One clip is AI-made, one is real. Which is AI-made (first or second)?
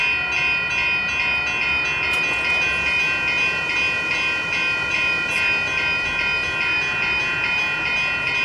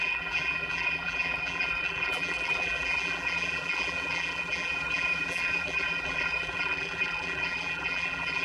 second